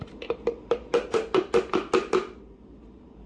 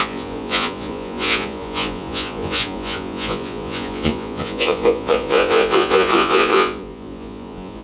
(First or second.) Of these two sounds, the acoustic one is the first